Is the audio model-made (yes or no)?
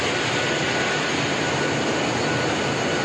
no